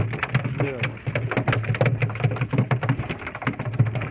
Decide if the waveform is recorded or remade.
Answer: recorded